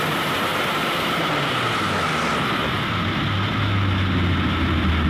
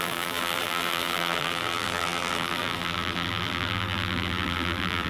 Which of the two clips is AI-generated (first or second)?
second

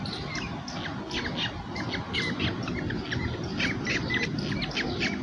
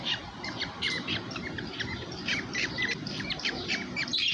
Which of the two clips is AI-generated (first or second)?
second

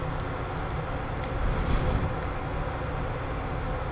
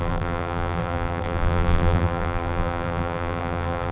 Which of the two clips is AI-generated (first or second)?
second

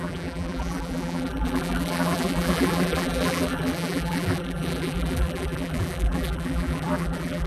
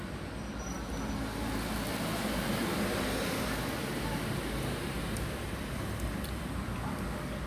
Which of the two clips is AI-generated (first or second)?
first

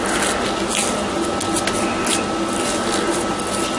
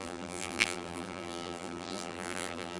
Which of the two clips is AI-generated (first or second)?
second